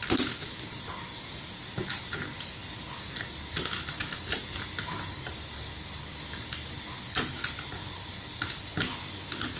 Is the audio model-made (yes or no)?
no